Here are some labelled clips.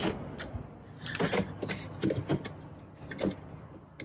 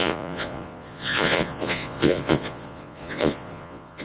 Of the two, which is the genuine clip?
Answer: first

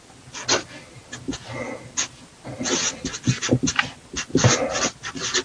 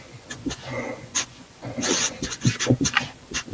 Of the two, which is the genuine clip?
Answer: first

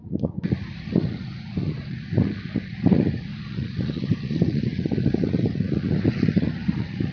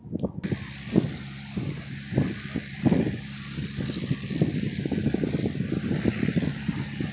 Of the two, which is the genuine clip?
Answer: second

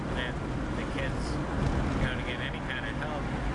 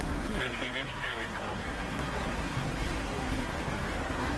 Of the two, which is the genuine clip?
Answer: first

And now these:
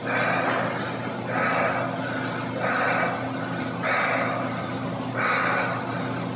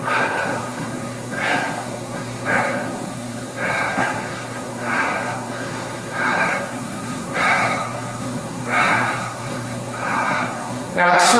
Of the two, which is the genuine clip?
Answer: first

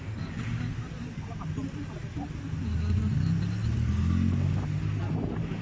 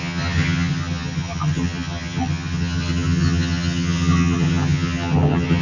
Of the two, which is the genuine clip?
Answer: first